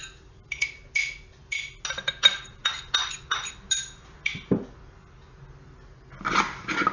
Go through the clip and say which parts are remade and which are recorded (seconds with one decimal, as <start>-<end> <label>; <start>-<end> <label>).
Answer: 0.0-6.9 recorded